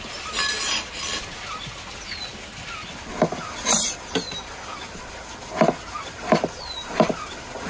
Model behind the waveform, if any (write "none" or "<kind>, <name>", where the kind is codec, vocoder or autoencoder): none